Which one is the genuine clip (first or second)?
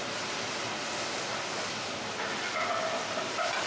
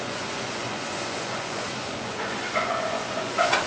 first